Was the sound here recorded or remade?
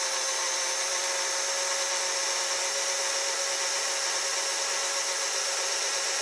recorded